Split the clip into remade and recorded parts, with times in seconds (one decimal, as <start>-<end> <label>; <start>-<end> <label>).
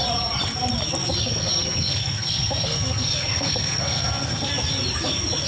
0.0-1.2 recorded; 1.2-4.5 remade; 4.5-5.5 recorded